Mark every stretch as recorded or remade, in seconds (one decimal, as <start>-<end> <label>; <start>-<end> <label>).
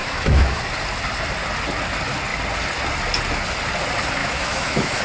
0.0-0.6 remade; 0.6-4.2 recorded; 4.2-5.0 remade